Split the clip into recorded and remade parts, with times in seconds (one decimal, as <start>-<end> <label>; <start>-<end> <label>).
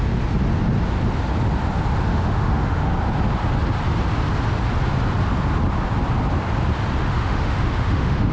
0.0-2.1 recorded; 2.1-2.9 remade; 2.9-7.0 recorded; 7.0-8.3 remade